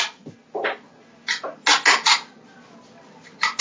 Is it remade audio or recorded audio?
recorded